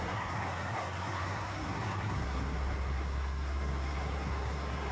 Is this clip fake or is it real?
fake